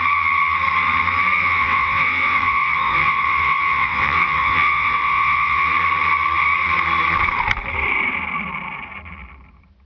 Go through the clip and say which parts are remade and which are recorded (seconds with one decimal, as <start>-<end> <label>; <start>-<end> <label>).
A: 0.0-1.4 recorded; 1.4-5.7 remade; 5.7-9.9 recorded